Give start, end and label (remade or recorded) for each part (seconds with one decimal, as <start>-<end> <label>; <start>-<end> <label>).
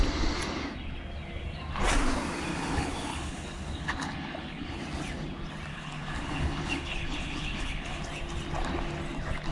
0.0-2.5 recorded; 2.5-4.8 remade; 4.8-5.7 recorded; 5.7-8.0 remade; 8.0-9.5 recorded